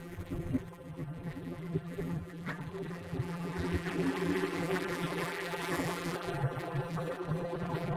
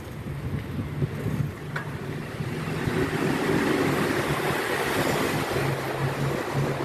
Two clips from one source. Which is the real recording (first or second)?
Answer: second